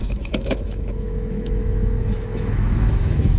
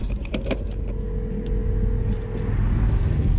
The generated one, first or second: first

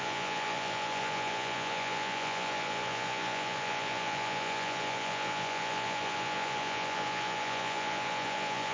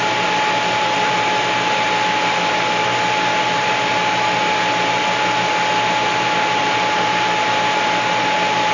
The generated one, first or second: first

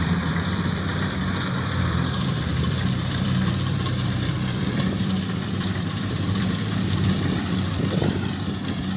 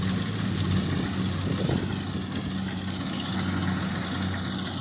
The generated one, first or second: first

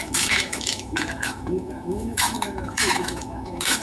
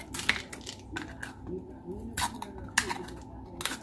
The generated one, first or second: first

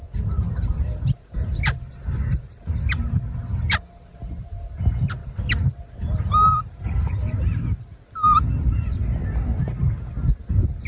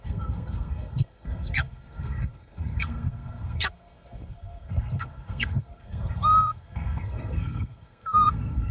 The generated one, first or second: second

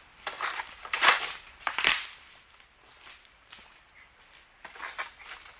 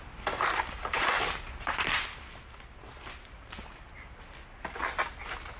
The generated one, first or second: first